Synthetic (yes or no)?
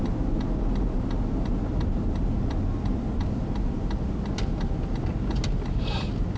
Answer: no